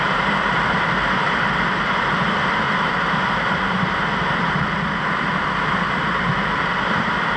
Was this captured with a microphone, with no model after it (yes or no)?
no